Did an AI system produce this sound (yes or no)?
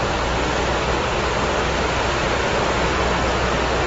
no